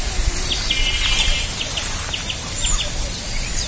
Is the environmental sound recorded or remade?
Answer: recorded